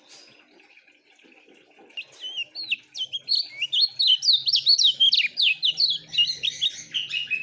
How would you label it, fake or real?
real